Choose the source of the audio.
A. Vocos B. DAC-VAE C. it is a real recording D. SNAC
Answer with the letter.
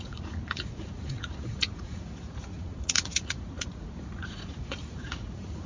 A